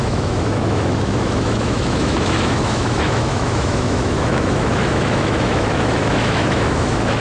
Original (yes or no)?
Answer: no